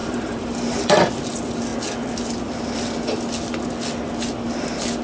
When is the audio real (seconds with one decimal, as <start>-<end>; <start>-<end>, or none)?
1.1-5.0